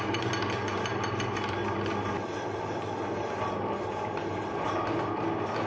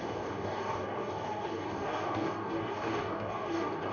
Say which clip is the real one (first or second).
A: first